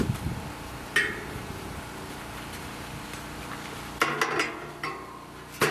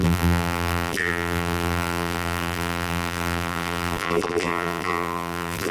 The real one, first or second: first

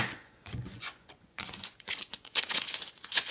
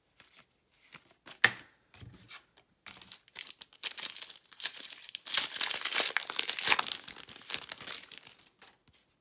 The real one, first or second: second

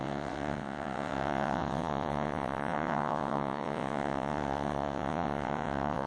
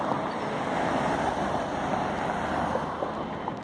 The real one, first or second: second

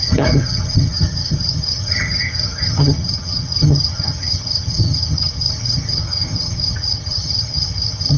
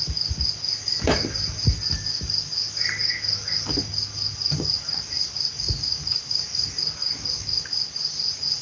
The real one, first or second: second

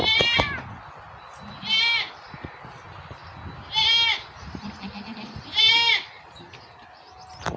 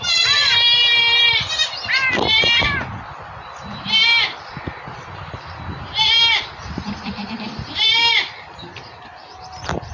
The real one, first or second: first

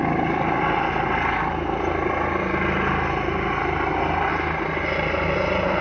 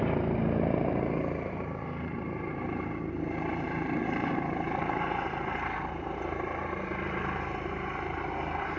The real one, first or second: first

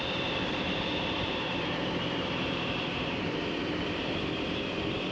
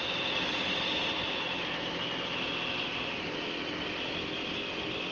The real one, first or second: second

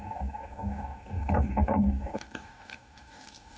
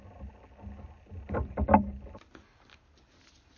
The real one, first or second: second